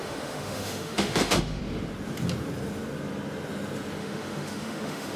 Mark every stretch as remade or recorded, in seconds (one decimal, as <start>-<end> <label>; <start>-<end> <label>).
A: 0.0-1.6 remade; 1.6-4.0 recorded; 4.0-5.2 remade

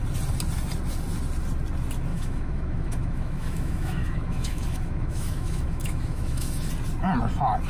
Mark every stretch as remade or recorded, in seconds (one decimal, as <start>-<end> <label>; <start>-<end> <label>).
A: 0.0-2.1 recorded; 2.1-6.7 remade; 6.7-7.7 recorded

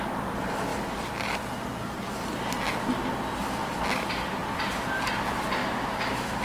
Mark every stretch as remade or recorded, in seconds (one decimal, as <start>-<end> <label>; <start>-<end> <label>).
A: 0.0-5.6 recorded; 5.6-6.4 remade

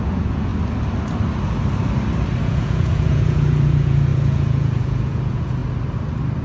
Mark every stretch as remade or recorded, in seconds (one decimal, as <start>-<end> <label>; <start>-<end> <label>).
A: 0.0-0.5 remade; 0.5-2.4 recorded; 2.4-5.6 remade; 5.6-6.4 recorded

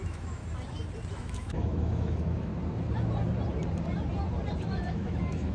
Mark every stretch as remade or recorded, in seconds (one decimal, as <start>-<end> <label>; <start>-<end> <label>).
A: 0.0-0.4 remade; 0.4-1.1 recorded; 1.1-2.5 remade; 2.5-4.6 recorded; 4.6-5.5 remade

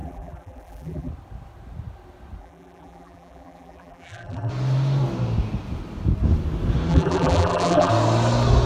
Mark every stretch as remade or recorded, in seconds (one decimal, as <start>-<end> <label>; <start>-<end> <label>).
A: 0.0-1.1 remade; 1.1-2.4 recorded; 2.4-4.5 remade; 4.5-6.9 recorded; 6.9-7.9 remade; 7.9-8.7 recorded